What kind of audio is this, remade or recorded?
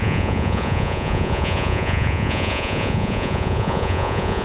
remade